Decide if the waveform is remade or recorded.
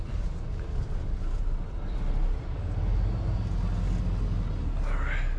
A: recorded